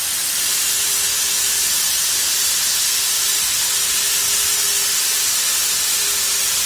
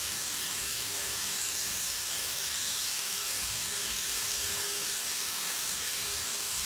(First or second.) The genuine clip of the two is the first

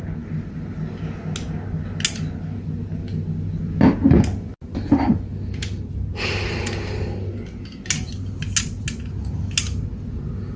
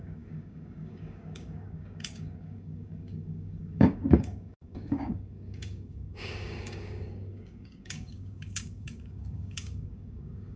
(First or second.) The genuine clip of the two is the first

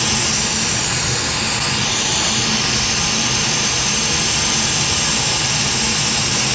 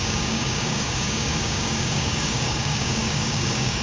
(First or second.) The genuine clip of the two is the first